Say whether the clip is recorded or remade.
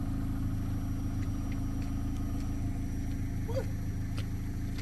recorded